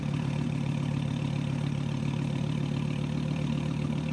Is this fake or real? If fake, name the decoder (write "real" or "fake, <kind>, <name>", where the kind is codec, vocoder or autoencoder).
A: fake, vocoder, BigVGAN v2